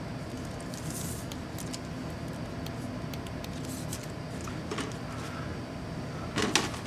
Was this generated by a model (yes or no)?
no